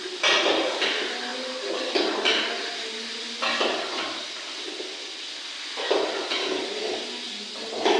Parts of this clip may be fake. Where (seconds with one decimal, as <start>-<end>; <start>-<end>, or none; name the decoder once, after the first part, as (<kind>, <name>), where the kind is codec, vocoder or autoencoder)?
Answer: none